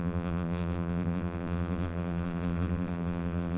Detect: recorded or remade remade